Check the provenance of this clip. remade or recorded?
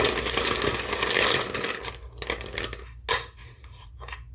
recorded